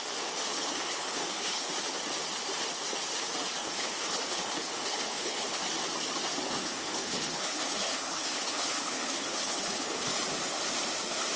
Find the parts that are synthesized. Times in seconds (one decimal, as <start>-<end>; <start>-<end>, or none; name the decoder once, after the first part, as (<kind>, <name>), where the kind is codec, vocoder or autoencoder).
0.5-1.7 (codec, HILCodec); 3.6-5.6; 6.6-10.1